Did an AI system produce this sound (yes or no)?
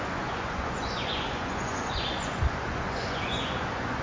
yes